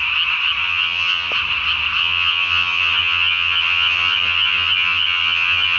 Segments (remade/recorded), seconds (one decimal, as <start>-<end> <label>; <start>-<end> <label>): 0.0-0.6 recorded; 0.6-1.3 remade; 1.3-2.0 recorded; 2.0-5.8 remade